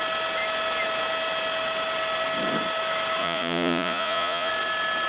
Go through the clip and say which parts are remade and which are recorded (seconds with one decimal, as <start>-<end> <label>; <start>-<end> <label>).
0.0-3.2 recorded; 3.2-4.5 remade; 4.5-5.1 recorded